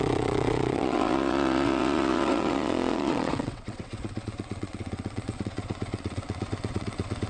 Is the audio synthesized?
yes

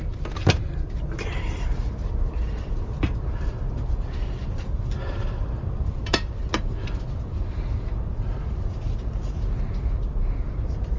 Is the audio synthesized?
yes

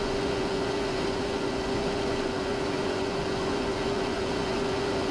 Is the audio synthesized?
yes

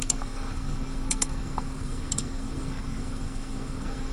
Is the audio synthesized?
yes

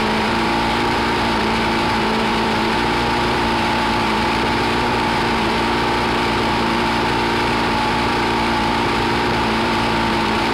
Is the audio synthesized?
yes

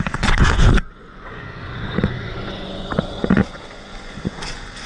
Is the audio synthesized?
yes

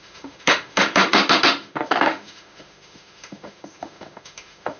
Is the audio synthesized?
yes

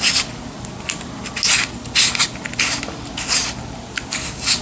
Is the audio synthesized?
no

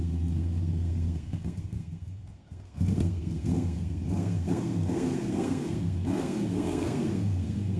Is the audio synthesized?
yes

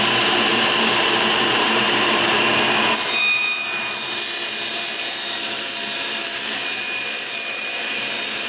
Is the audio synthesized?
yes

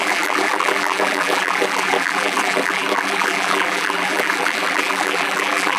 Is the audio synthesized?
yes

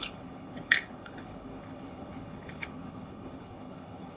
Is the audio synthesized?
yes